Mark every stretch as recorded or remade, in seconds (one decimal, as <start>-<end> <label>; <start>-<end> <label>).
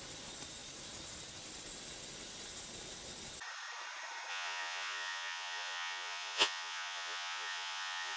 0.0-4.3 recorded; 4.3-8.2 remade